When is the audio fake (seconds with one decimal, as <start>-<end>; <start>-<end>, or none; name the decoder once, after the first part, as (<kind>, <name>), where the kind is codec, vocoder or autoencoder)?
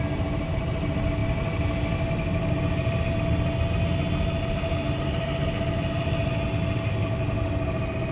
none